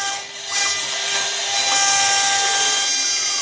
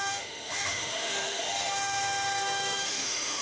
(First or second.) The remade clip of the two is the second